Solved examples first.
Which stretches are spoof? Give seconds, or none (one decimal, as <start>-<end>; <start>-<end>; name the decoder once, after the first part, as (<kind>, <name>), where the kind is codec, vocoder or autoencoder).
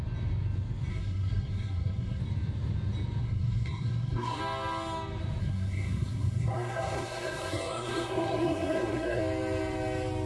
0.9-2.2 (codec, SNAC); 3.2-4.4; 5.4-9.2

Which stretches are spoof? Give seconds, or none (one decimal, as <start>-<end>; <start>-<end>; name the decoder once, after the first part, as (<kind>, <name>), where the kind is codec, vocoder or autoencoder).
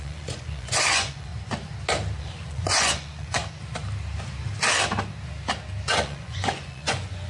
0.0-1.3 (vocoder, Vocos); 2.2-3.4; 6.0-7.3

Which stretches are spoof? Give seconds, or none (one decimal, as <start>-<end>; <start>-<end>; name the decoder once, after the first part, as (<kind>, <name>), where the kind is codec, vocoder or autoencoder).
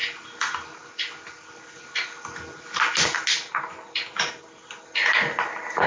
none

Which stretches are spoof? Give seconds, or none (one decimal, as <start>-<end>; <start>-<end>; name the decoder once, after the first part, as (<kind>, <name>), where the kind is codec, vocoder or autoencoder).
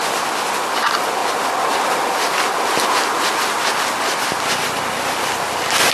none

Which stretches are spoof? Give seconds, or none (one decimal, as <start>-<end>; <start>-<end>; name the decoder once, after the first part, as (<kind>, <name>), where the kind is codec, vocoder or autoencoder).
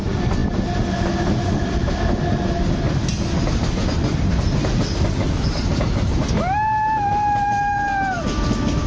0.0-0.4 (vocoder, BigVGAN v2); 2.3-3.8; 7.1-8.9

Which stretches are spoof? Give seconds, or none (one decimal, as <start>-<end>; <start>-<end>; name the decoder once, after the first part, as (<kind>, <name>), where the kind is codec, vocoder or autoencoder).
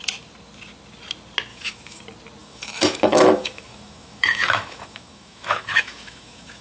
1.5-2.0 (autoencoder, DAC-VAE); 2.4-6.6